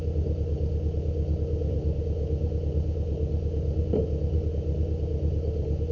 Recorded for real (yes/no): yes